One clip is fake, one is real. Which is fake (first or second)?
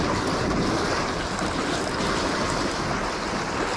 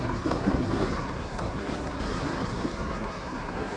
second